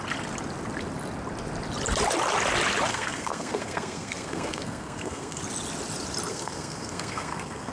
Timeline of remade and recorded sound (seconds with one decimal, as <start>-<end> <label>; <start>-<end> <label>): 0.0-2.9 recorded; 2.9-5.4 remade; 5.4-6.3 recorded; 6.3-7.7 remade